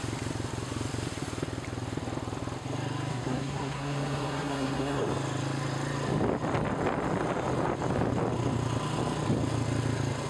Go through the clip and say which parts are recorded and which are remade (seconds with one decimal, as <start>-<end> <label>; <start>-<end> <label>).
0.0-3.1 recorded; 3.1-5.0 remade; 5.0-10.3 recorded